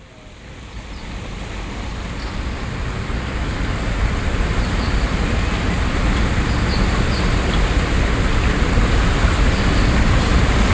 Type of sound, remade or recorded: recorded